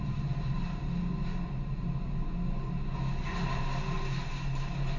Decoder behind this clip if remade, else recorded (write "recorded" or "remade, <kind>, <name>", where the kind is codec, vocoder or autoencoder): recorded